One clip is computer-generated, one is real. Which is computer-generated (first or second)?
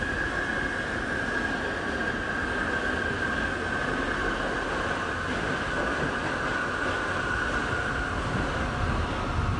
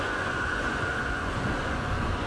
second